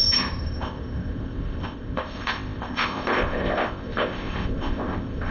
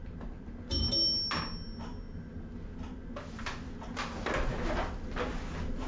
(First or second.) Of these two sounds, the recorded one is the second